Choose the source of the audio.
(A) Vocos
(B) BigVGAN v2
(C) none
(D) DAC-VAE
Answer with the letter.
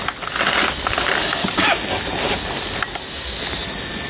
C